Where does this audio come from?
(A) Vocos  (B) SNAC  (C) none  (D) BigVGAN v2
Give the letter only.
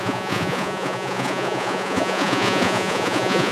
A